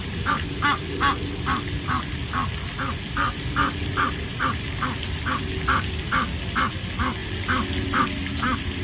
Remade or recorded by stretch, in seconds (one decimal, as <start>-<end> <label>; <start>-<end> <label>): 0.0-8.8 recorded